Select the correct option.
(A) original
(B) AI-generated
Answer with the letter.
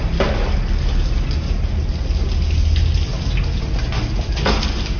A